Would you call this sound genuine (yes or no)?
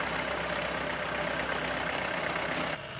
yes